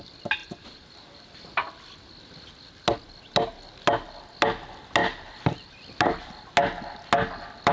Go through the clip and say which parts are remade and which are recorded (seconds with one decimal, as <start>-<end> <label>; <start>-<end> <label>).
0.0-0.4 recorded; 0.4-1.3 remade; 1.3-7.7 recorded